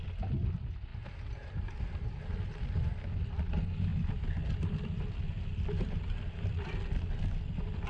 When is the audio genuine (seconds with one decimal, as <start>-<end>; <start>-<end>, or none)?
0.0-7.9